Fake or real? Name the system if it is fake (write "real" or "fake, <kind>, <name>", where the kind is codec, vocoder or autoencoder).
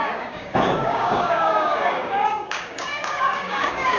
fake, codec, DAC